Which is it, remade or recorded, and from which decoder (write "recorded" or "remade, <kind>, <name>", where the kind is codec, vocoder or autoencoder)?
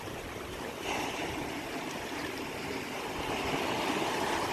recorded